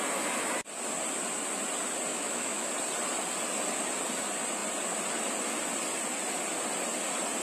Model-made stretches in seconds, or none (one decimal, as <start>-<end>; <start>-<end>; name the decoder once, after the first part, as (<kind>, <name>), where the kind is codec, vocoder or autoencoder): 2.1-2.7 (autoencoder, DAC-VAE)